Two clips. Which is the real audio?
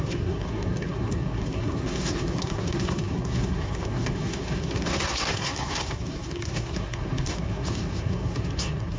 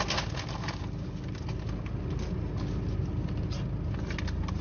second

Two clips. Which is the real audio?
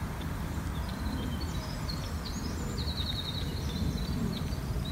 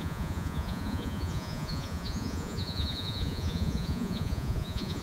first